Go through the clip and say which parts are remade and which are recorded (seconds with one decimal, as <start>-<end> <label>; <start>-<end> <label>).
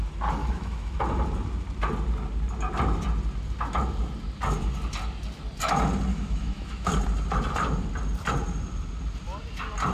0.0-0.4 recorded; 0.4-1.0 remade; 1.0-6.1 recorded; 6.1-6.9 remade; 6.9-9.9 recorded